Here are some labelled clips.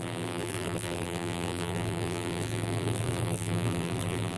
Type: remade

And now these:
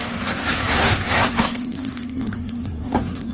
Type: remade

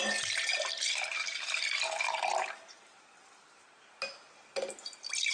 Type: recorded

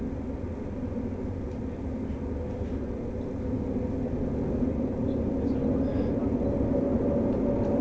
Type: recorded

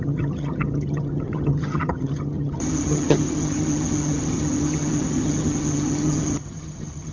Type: remade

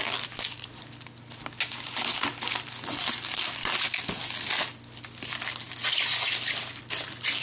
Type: recorded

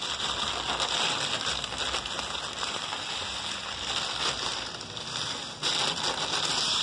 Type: recorded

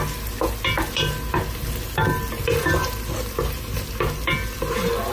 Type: recorded